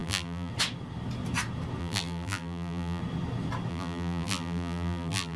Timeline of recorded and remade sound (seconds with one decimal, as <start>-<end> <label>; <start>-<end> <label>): 0.0-0.5 remade; 0.5-1.8 recorded; 1.8-3.0 remade; 3.0-3.7 recorded; 3.7-5.4 remade